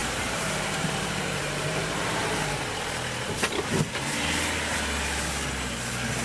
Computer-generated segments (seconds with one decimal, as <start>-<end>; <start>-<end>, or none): 0.0-2.2